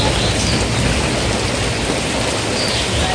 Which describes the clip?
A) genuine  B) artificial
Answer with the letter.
A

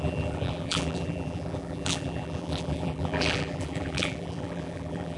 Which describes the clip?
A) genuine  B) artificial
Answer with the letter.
B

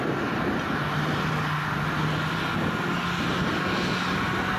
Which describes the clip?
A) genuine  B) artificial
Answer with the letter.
A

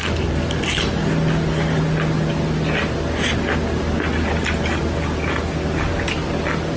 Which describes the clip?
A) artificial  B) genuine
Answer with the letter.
B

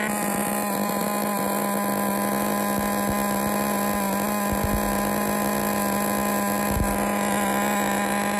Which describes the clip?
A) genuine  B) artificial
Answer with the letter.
A